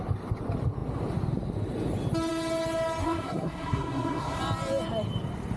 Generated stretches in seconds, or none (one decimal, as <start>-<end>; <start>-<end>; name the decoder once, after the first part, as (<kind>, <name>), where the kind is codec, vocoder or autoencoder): 3.0-4.4 (codec, SNAC)

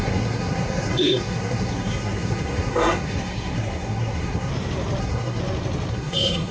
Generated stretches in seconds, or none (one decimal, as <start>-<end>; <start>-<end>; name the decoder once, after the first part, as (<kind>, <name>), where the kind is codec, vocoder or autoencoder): 0.0-4.5 (codec, SNAC); 5.0-5.4; 5.9-6.5

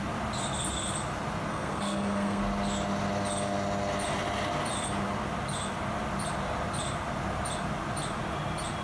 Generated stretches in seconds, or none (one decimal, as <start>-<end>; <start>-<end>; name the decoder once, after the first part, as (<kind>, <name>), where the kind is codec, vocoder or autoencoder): 1.5-2.4 (codec, SNAC)

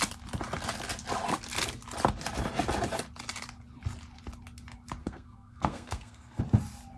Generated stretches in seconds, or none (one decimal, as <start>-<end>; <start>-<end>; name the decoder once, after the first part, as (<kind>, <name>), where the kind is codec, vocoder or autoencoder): 5.0-6.4 (codec, SNAC)

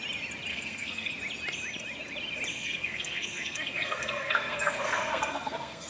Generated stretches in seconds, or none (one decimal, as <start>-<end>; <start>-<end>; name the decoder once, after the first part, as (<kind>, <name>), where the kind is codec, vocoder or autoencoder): 0.5-1.1 (codec, SNAC); 2.5-5.9

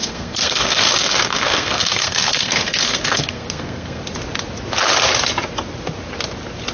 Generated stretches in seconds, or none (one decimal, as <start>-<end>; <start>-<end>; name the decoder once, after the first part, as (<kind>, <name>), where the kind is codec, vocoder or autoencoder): 0.0-4.0 (codec, SNAC)